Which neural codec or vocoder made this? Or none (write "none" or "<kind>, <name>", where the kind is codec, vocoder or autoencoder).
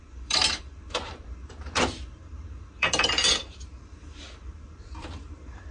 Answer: vocoder, BigVGAN v2